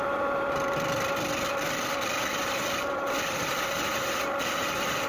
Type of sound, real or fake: real